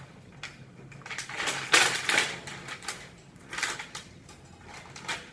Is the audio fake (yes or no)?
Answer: no